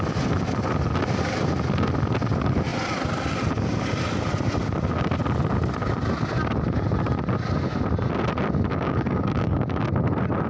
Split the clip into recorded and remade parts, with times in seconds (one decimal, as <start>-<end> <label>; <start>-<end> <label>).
0.0-8.7 recorded; 8.7-9.9 remade; 9.9-10.5 recorded